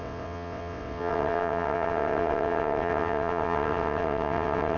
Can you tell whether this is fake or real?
fake